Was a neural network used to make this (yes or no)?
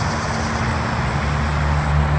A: no